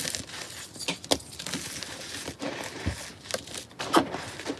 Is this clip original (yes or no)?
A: yes